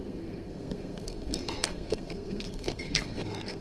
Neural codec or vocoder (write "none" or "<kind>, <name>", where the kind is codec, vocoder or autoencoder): codec, SNAC